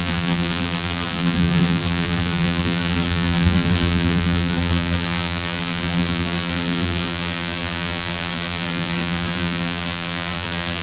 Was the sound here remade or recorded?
remade